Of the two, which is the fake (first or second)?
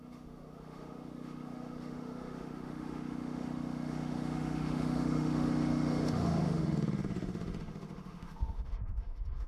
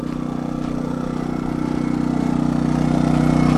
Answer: first